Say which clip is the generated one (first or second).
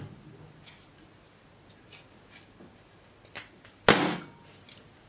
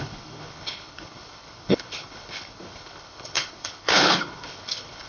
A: second